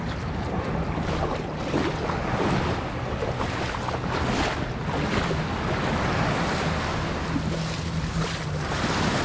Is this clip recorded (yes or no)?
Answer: yes